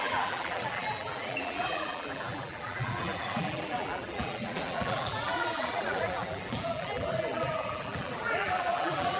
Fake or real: fake